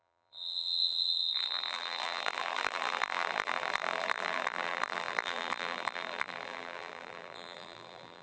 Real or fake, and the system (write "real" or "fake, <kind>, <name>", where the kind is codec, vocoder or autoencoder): fake, vocoder, BigVGAN v2